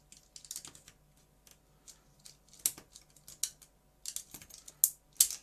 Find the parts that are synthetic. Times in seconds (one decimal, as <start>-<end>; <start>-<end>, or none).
none